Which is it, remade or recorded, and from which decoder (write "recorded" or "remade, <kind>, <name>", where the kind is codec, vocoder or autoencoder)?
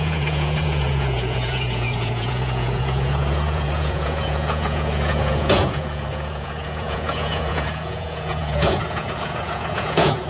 remade, vocoder, Vocos